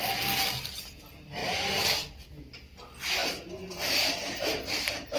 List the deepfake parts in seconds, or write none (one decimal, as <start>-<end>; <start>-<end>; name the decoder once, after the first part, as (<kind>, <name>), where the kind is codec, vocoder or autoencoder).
none